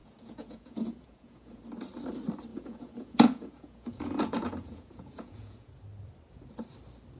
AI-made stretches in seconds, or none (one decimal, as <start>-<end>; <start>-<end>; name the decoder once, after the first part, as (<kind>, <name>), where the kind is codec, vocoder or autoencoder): 0.0-1.6 (vocoder, Vocos); 2.5-5.7